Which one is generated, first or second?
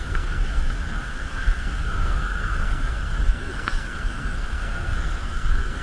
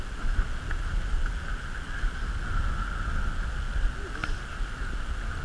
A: first